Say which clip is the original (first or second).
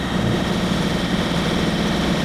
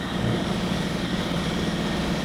first